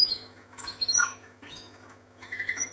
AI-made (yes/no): yes